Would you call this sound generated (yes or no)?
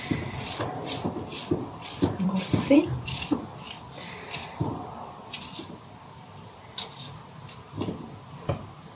yes